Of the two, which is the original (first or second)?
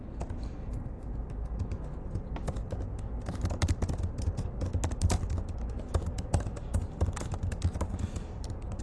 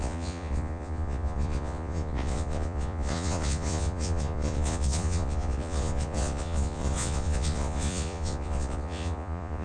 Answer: first